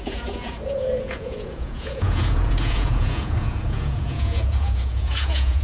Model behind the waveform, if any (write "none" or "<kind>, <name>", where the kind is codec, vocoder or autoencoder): vocoder, Vocos